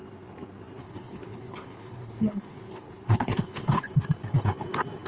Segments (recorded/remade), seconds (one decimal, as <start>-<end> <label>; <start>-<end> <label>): 0.0-0.8 recorded; 0.8-3.9 remade; 3.9-5.1 recorded